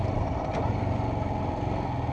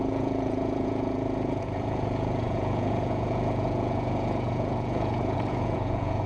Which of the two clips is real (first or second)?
first